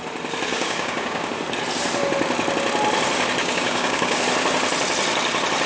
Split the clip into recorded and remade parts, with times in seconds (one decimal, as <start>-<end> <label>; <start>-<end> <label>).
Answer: 0.0-0.5 recorded; 0.5-1.3 remade; 1.3-3.4 recorded; 3.4-4.2 remade; 4.2-5.7 recorded